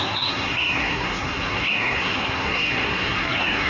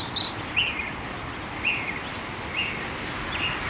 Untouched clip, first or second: second